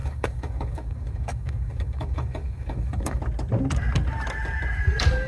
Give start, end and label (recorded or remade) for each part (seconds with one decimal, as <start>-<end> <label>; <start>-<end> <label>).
0.0-3.2 remade; 3.2-5.3 recorded